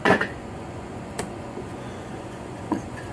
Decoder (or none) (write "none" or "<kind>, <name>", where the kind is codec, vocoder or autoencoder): vocoder, Vocos